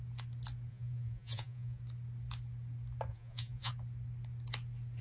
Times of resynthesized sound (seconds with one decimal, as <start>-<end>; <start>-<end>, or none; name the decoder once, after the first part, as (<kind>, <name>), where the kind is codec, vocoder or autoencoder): 0.7-1.8 (vocoder, Vocos); 3.1-3.7